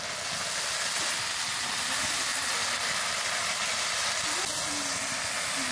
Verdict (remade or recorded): recorded